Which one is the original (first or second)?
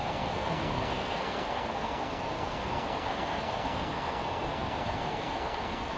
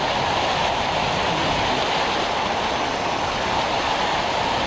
second